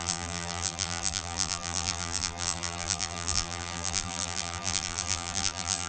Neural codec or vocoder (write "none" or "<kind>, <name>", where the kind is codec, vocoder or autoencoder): vocoder, BigVGAN v2